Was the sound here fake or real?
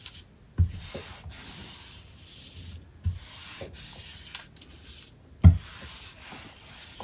real